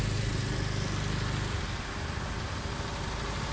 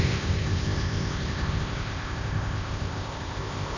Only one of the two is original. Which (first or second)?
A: first